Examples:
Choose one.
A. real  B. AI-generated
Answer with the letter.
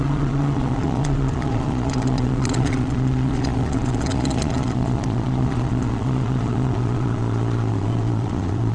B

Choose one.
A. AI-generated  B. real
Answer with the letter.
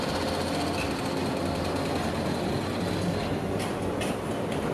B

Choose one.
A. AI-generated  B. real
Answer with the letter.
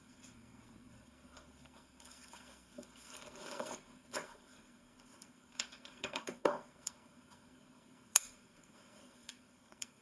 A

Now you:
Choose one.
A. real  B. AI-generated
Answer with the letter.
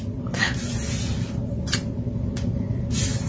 A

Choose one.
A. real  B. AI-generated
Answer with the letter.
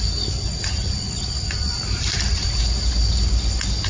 A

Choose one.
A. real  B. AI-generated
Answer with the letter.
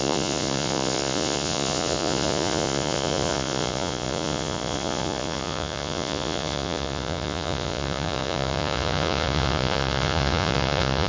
B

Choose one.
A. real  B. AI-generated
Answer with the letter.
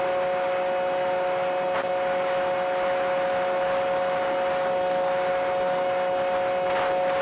A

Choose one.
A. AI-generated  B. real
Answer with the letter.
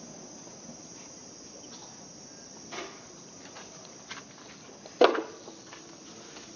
B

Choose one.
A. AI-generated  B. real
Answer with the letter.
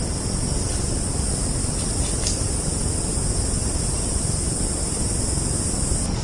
B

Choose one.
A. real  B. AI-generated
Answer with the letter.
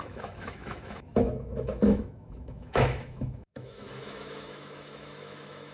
B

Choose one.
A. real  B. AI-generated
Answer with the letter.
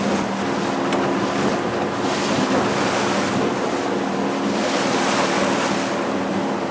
A